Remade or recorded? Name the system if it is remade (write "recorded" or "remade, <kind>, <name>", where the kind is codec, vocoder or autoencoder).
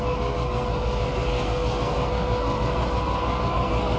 remade, codec, SNAC